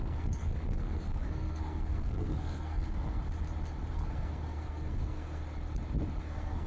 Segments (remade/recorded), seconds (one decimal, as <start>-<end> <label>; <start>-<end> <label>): 0.0-3.2 remade; 3.2-3.9 recorded; 3.9-5.4 remade; 5.4-6.2 recorded; 6.2-6.7 remade